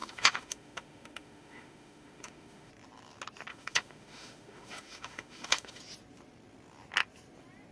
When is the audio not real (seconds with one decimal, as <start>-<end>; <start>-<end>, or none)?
0.0-2.7; 3.5-5.8